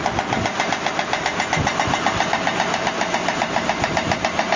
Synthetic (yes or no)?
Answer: no